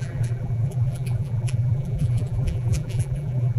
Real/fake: fake